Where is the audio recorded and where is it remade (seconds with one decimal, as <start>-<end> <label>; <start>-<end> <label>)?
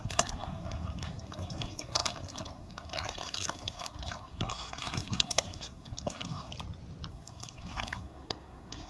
0.0-6.5 remade; 6.5-7.1 recorded; 7.1-8.9 remade